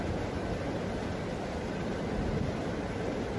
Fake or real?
real